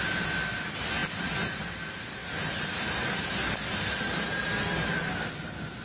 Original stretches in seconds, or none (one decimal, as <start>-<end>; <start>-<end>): 0.0-5.8